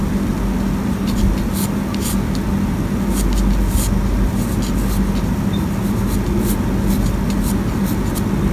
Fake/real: real